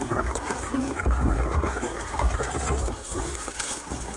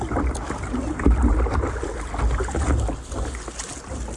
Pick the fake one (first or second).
first